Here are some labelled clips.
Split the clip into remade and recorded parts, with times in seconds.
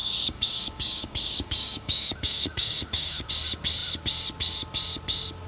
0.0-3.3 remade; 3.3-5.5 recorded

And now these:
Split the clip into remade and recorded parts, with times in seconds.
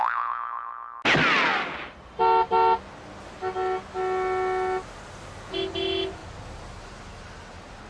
0.0-7.9 recorded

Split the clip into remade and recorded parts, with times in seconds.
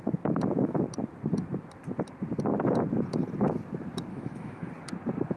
0.0-4.1 recorded; 4.1-4.7 remade; 4.7-5.4 recorded